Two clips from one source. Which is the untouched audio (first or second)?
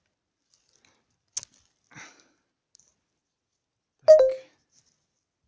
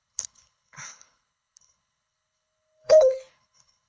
first